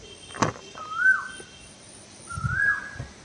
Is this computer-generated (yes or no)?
no